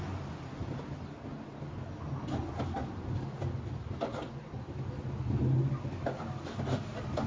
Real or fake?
real